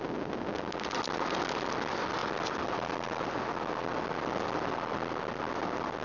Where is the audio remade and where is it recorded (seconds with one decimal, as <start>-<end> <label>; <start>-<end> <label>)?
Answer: 0.0-6.0 recorded